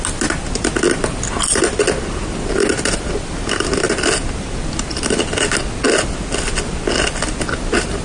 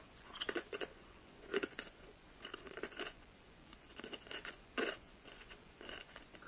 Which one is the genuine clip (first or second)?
first